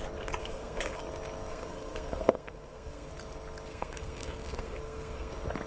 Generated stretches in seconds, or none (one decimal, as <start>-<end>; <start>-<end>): 0.4-1.0; 1.5-3.1; 3.7-5.3